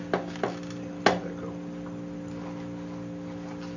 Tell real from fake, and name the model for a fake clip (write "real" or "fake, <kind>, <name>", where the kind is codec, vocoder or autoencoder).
real